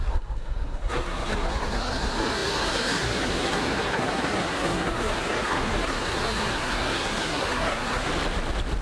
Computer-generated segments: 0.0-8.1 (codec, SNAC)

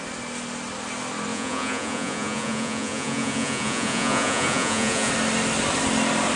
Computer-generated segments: 1.3-5.1 (vocoder, Vocos)

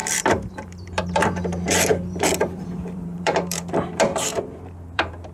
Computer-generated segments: 0.0-5.3 (vocoder, BigVGAN v2)